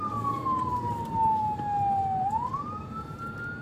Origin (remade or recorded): recorded